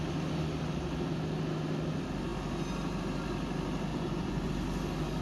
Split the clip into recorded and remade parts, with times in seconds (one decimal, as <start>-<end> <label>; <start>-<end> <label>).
0.0-3.9 recorded; 3.9-4.5 remade; 4.5-5.2 recorded